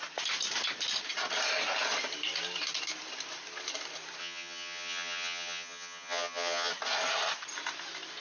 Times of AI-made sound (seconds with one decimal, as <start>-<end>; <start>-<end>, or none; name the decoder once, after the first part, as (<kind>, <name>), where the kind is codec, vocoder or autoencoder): 4.2-6.7 (vocoder, HiFi-GAN)